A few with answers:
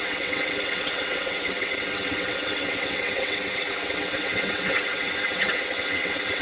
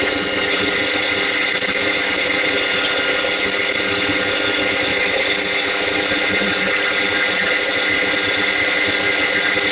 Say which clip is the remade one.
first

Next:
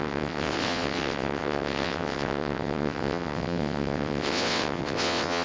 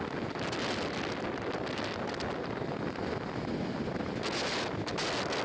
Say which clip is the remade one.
first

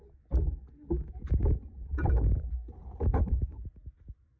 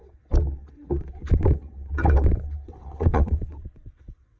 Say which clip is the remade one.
second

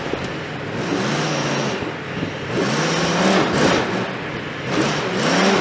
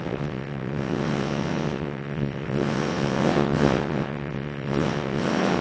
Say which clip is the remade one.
second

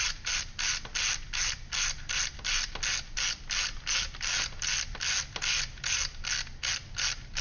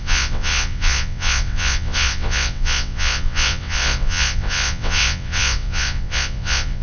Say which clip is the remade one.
second